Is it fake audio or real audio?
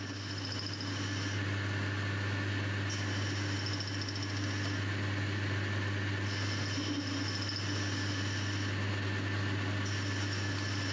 real